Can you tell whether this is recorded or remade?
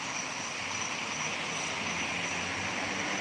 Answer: recorded